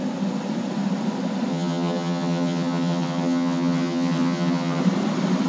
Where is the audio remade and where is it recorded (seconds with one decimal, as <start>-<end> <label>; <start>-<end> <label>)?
0.0-1.5 recorded; 1.5-4.8 remade; 4.8-5.5 recorded